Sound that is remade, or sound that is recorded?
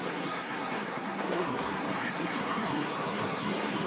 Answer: remade